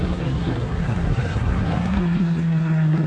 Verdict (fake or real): fake